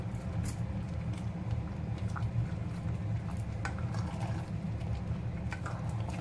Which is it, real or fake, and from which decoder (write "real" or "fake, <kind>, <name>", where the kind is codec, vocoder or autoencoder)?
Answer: real